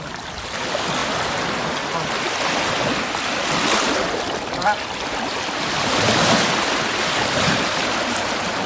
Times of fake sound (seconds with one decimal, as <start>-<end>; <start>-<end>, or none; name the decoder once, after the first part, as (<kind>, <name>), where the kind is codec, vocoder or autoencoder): 0.0-1.0 (vocoder, BigVGAN v2); 4.1-8.7